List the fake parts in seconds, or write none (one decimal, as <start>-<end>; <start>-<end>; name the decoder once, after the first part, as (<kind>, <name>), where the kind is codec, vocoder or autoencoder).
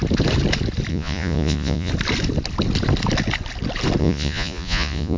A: 0.9-1.9 (vocoder, Vocos); 4.0-5.2